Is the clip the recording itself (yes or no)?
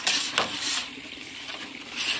yes